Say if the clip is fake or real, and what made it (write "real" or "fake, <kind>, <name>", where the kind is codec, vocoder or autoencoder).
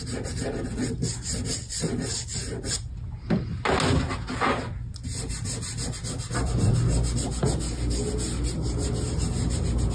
real